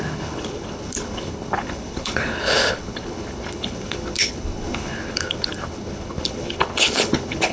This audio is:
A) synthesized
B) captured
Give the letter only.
A